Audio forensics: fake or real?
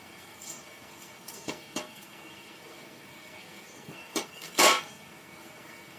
fake